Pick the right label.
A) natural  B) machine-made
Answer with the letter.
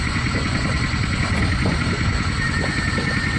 B